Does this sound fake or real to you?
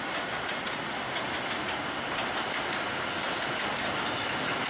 real